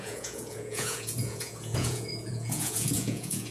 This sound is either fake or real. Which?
fake